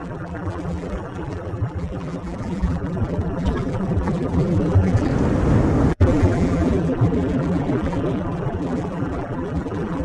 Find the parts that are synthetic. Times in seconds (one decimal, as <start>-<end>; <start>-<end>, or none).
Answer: 0.0-5.1; 5.9-10.0